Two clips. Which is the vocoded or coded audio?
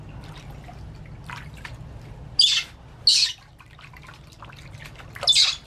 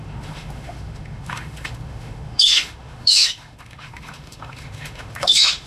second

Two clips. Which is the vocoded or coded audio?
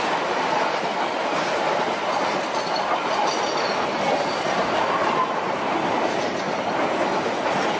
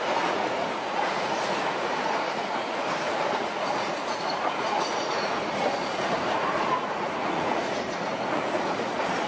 second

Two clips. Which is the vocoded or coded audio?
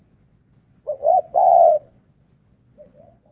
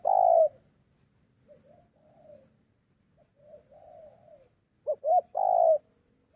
first